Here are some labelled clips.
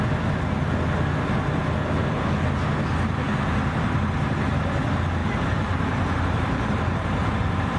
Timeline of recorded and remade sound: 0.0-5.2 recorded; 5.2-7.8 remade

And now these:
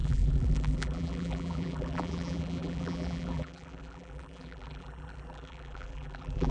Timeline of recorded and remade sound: 0.0-6.5 remade

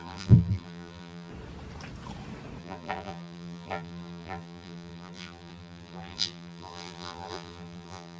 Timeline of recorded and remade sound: 0.0-1.3 remade; 1.3-2.6 recorded; 2.6-8.2 remade

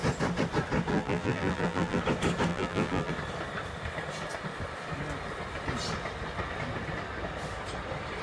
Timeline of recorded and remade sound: 0.0-0.9 recorded; 0.9-2.0 remade; 2.0-2.5 recorded; 2.5-3.1 remade; 3.1-8.2 recorded

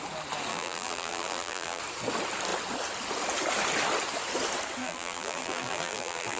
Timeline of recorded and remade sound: 0.0-0.5 recorded; 0.5-1.8 remade; 1.8-4.8 recorded; 4.8-6.4 remade